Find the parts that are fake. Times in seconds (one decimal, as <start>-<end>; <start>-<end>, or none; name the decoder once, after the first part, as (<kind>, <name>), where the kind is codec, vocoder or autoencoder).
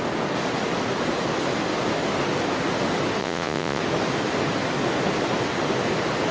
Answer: 3.2-3.8 (vocoder, Vocos)